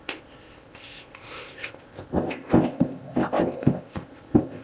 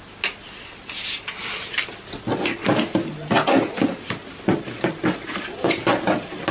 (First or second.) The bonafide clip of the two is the second